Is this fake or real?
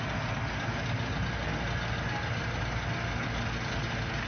real